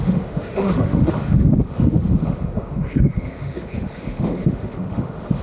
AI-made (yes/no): yes